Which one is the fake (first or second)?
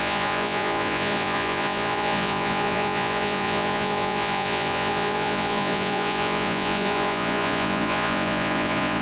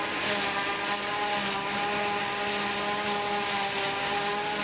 first